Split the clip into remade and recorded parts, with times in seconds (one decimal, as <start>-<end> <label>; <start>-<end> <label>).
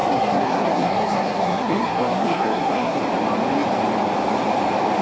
0.0-3.0 remade; 3.0-5.0 recorded